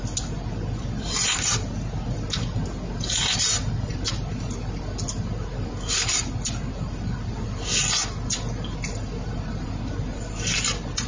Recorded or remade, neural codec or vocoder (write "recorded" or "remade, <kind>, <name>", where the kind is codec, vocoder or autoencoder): recorded